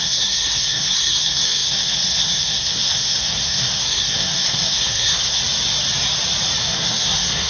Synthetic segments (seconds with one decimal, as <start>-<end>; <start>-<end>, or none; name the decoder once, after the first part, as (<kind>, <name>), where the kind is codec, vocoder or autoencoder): 0.0-5.4 (codec, SNAC); 6.6-7.5